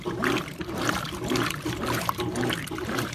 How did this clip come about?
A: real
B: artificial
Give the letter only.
B